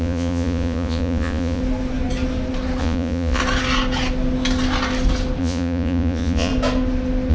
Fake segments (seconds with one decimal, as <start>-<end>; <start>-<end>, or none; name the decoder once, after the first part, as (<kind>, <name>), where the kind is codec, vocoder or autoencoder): 0.0-1.6 (vocoder, Vocos); 2.8-3.4; 5.4-6.5